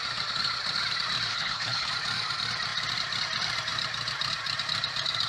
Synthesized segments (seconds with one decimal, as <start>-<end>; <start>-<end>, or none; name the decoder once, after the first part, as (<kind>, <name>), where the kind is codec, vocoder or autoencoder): 1.3-1.9 (codec, HILCodec)